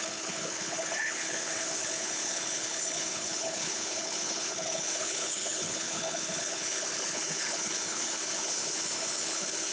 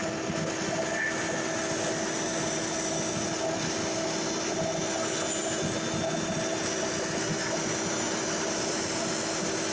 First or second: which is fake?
first